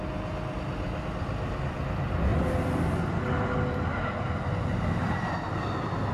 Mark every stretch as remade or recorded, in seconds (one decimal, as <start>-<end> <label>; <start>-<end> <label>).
0.0-6.1 recorded